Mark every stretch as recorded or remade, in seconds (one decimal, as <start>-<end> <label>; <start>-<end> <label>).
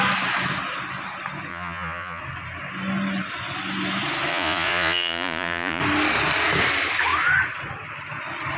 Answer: 0.0-1.5 recorded; 1.5-2.2 remade; 2.2-4.3 recorded; 4.3-5.8 remade; 5.8-8.6 recorded